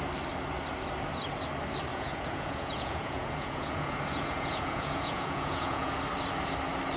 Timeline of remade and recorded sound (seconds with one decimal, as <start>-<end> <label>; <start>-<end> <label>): 0.0-1.9 recorded; 1.9-5.9 remade; 5.9-7.0 recorded